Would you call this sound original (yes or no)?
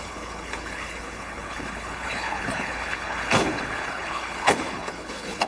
no